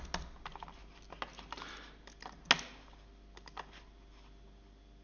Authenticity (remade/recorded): recorded